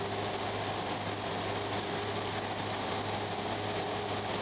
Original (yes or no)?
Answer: yes